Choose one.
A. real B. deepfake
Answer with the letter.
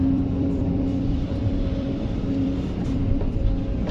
B